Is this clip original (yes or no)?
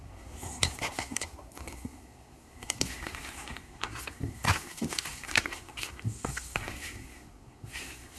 no